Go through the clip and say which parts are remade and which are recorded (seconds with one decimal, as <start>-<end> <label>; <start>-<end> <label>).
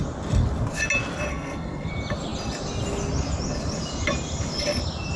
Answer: 0.0-1.3 recorded; 1.3-1.9 remade; 1.9-5.2 recorded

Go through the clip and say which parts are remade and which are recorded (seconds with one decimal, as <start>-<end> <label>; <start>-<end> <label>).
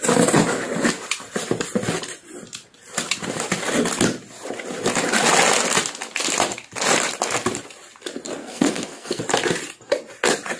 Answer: 0.0-8.4 recorded; 8.4-9.2 remade; 9.2-10.6 recorded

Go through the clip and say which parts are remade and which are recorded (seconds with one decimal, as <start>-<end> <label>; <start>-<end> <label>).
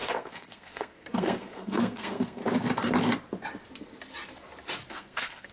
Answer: 0.0-2.4 remade; 2.4-4.9 recorded; 4.9-5.5 remade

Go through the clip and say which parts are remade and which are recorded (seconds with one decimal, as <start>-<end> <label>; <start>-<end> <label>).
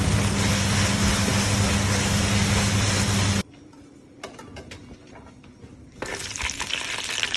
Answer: 0.0-7.4 recorded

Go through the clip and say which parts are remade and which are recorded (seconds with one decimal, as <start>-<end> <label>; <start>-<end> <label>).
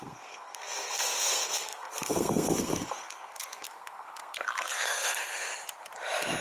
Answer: 0.0-5.5 remade; 5.5-6.4 recorded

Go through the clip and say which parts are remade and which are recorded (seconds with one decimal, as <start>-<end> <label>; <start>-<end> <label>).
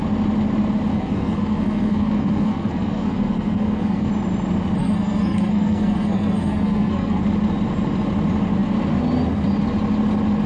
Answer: 0.0-0.9 recorded; 0.9-4.1 remade; 4.1-4.8 recorded; 4.8-7.2 remade; 7.2-10.5 recorded